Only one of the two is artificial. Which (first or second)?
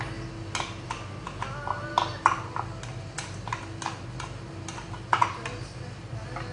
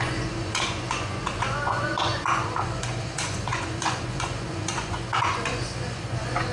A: second